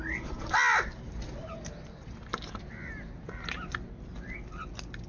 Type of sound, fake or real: real